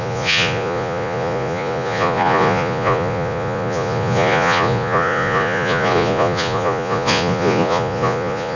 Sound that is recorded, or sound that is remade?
remade